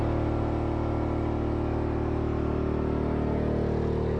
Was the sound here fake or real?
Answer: real